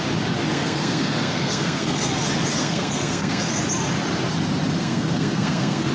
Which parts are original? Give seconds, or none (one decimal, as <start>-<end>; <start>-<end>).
0.0-0.5; 2.1-2.6; 3.6-4.8